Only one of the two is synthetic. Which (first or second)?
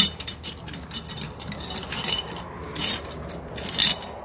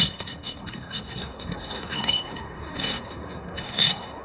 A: second